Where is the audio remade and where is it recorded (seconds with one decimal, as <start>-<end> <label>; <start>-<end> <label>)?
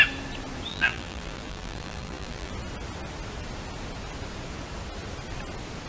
0.0-0.7 recorded; 0.7-2.5 remade; 2.5-5.9 recorded